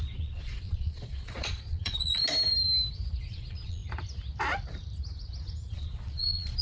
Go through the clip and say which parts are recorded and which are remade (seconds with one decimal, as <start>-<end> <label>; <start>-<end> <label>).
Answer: 0.0-2.2 remade; 2.2-3.2 recorded; 3.2-3.8 remade; 3.8-5.7 recorded; 5.7-6.6 remade